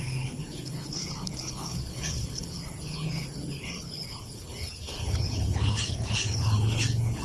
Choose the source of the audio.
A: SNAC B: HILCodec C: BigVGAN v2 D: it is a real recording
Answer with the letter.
B